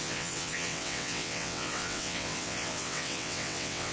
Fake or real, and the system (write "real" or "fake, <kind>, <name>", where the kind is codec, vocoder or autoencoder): fake, vocoder, WaveNeXt